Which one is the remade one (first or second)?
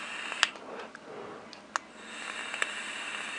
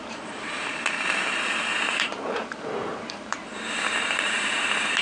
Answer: second